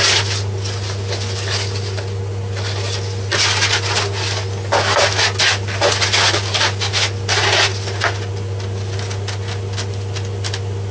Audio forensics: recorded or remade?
recorded